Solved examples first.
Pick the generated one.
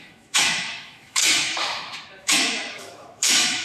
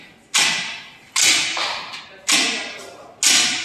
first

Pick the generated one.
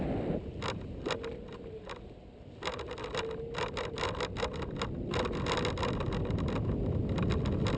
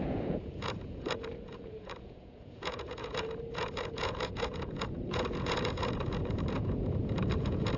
second